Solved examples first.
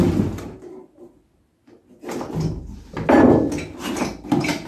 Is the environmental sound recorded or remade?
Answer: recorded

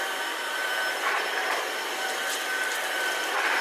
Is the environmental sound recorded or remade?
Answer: remade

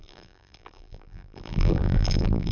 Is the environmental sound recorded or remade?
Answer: remade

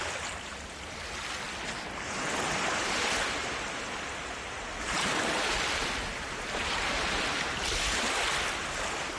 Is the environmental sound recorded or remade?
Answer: recorded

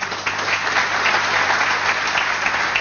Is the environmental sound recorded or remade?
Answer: recorded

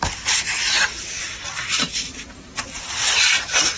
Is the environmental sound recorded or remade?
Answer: remade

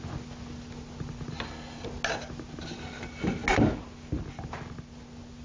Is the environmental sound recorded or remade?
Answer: recorded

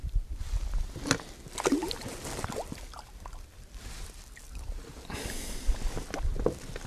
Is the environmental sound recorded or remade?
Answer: recorded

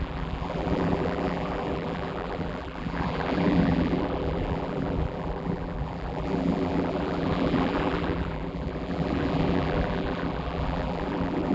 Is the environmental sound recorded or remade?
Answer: remade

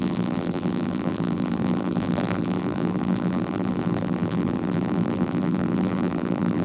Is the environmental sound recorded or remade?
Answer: remade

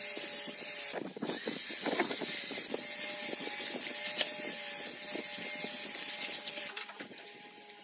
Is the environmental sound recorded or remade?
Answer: recorded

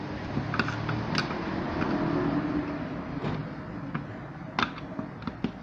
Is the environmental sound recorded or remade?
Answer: recorded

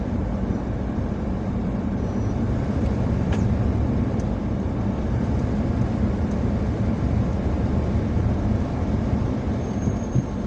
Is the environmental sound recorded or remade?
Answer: remade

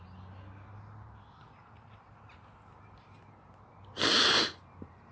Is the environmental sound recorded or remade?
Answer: recorded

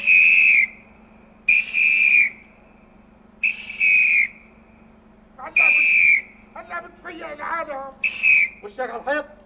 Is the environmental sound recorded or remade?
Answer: recorded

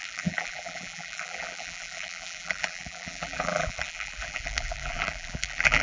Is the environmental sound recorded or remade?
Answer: remade